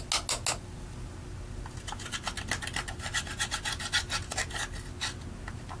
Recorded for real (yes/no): yes